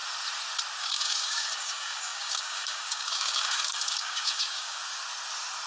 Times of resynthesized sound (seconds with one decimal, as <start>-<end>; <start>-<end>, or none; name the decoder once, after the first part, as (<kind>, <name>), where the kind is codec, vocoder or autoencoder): 0.8-4.8 (codec, DAC)